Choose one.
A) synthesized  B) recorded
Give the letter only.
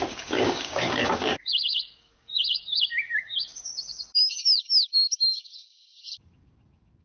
A